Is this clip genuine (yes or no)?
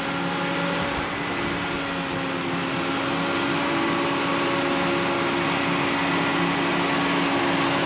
yes